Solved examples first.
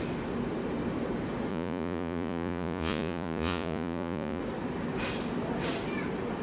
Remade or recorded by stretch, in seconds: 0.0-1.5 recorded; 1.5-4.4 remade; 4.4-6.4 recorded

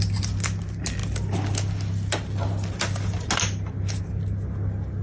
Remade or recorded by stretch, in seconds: 0.0-5.0 recorded